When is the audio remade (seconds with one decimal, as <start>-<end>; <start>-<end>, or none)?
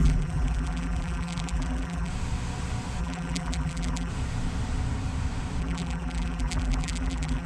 0.0-2.1; 3.0-4.1; 5.6-7.5